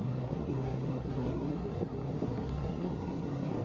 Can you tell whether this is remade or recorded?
remade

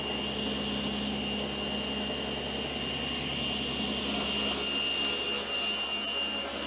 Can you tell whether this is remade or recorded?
recorded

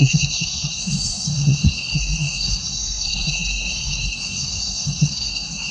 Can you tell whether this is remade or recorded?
remade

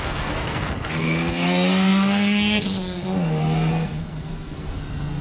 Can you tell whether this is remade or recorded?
remade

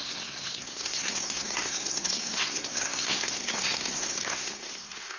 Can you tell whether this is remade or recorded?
remade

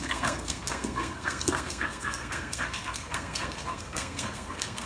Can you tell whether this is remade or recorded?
remade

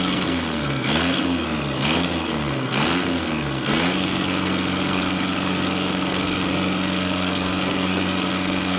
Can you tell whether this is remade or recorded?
remade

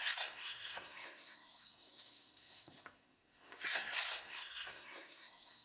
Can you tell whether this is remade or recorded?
remade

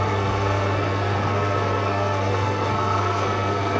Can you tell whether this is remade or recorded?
remade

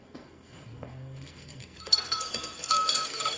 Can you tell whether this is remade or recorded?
remade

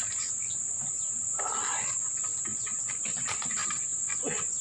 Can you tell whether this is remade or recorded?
recorded